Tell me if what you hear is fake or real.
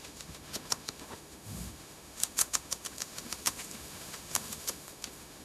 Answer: fake